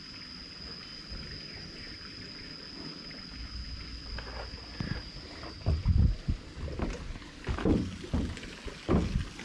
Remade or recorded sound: recorded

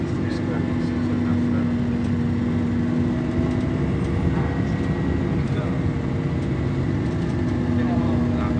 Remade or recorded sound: recorded